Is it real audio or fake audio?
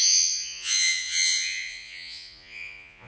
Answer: fake